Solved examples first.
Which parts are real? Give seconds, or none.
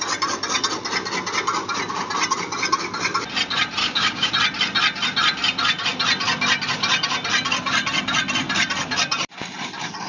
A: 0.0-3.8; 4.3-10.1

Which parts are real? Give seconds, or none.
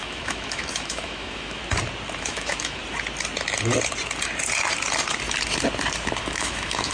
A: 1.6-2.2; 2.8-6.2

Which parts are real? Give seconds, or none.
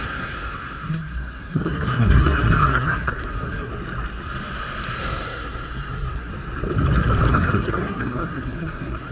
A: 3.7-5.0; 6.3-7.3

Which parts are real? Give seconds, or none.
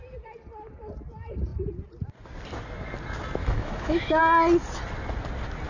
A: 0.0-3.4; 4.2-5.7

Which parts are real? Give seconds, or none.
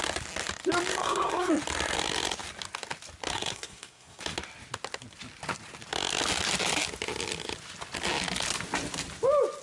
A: 0.0-1.0; 1.5-3.3; 4.2-9.6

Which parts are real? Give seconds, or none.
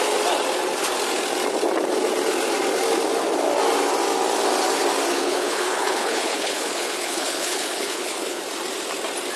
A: 0.0-5.1; 8.4-9.4